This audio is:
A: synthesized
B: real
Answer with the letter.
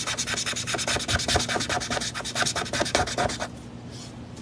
B